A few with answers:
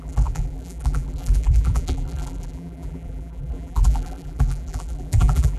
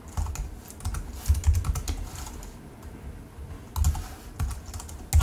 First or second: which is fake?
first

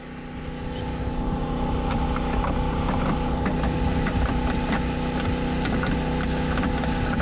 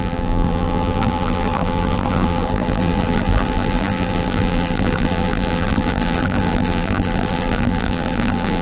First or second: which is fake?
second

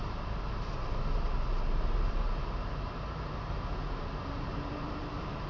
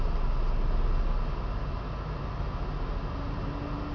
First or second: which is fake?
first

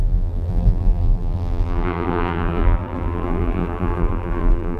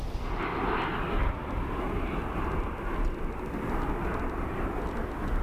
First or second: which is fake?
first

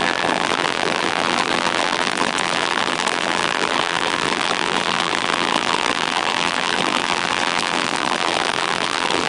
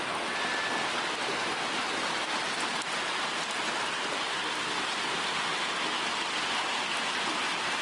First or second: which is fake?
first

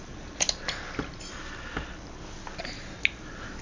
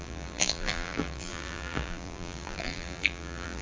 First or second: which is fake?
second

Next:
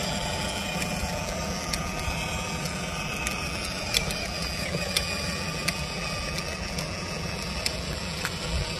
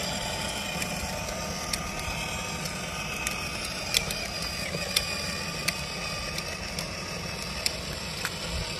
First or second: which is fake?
first